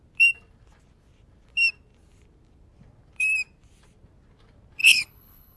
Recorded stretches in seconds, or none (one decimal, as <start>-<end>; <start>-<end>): 0.0-4.8